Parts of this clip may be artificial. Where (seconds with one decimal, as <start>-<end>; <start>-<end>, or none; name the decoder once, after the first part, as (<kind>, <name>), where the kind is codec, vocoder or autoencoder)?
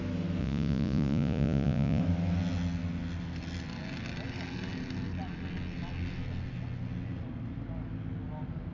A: 0.4-2.0 (vocoder, Vocos)